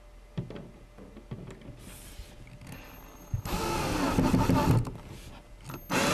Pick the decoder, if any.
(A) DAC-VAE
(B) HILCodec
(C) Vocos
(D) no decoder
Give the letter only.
D